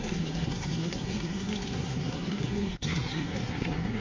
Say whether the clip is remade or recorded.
remade